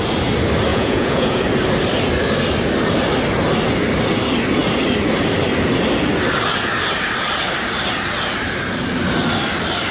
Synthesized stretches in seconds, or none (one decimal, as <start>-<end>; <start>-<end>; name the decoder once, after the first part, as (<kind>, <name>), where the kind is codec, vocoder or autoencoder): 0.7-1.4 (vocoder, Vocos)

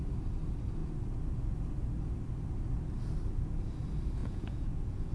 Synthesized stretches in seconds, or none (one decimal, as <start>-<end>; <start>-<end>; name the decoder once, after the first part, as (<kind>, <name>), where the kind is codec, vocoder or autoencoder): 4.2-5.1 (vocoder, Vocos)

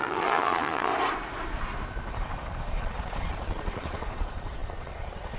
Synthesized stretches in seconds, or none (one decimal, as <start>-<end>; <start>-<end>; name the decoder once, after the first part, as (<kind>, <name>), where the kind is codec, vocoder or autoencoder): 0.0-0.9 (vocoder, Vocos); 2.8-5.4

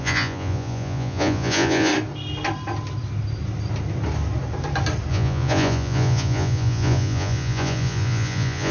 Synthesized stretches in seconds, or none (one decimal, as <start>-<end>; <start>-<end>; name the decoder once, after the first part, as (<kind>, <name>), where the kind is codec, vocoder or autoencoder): 0.0-1.9 (vocoder, Vocos); 5.1-8.7